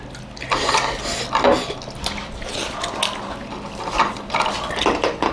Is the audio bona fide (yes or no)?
yes